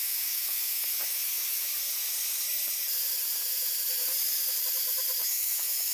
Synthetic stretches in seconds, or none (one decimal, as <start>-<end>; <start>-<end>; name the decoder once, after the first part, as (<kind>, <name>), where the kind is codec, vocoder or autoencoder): 0.0-1.7 (autoencoder, DAC-VAE); 5.2-5.9